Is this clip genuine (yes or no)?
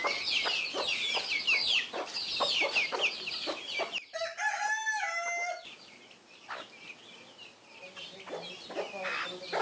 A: yes